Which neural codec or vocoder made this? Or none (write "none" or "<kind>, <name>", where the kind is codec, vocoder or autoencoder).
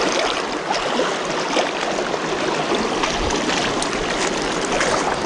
none